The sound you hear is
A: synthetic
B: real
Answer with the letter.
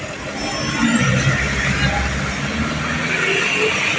B